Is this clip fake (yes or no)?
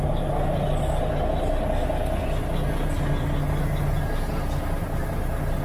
no